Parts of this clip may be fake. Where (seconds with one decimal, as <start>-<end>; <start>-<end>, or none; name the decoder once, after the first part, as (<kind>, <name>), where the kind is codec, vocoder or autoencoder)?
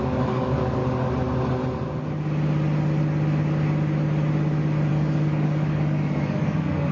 0.0-0.8 (codec, DAC); 4.9-6.9